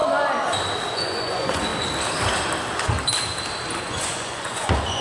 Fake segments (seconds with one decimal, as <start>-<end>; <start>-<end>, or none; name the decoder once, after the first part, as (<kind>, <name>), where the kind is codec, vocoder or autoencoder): 0.9-1.7 (vocoder, Vocos); 3.8-5.0